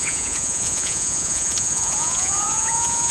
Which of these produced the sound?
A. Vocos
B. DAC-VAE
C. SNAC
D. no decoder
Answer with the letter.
A